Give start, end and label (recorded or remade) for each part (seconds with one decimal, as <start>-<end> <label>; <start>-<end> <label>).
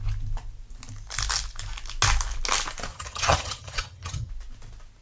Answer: 0.0-2.9 recorded; 2.9-4.3 remade; 4.3-5.0 recorded